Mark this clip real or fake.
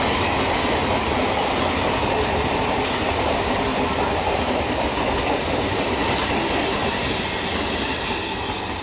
real